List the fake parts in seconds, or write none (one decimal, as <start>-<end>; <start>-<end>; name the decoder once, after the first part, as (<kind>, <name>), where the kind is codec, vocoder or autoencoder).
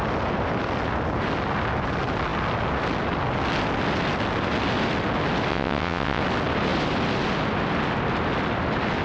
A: 5.5-6.2 (vocoder, WaveNeXt)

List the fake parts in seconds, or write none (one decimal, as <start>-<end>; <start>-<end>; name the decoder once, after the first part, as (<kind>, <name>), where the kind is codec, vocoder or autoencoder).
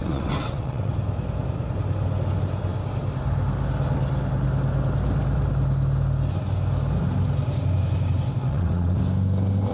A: 0.0-0.9 (vocoder, WaveNeXt); 8.4-9.0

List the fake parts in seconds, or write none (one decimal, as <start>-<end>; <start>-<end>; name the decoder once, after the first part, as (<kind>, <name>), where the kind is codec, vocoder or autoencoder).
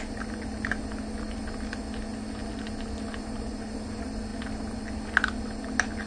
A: none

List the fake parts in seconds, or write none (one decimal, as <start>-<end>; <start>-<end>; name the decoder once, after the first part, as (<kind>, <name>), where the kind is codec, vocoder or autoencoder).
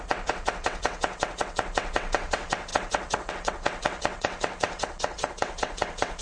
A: 0.0-6.2 (vocoder, WaveNeXt)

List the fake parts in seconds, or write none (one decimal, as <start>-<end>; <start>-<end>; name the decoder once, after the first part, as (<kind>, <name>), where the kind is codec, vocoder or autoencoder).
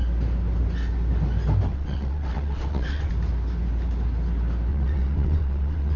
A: 1.7-3.1 (vocoder, WaveNeXt); 4.7-6.0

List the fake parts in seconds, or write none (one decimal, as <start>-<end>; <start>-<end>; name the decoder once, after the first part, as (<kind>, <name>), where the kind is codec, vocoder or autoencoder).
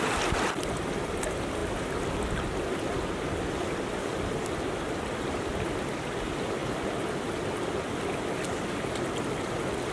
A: none